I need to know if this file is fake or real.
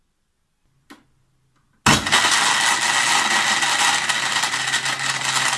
real